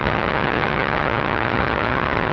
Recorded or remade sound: remade